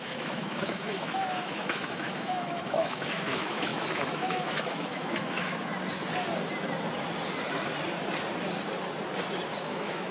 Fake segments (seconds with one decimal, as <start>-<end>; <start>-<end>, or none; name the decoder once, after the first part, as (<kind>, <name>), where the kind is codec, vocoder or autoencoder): 0.0-5.7 (autoencoder, DAC-VAE); 9.6-10.1